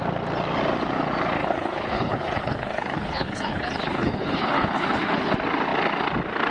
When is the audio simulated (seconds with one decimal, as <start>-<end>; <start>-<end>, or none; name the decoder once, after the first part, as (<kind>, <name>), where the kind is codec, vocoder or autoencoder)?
1.4-5.3 (codec, HILCodec)